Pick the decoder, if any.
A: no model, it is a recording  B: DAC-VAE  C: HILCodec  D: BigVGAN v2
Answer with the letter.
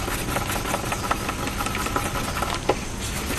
A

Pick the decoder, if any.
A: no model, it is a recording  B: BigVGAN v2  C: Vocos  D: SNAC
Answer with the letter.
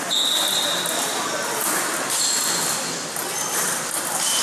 A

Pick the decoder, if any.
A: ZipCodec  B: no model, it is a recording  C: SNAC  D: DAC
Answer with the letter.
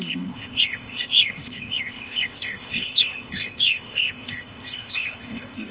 A